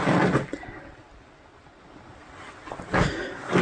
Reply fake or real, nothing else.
real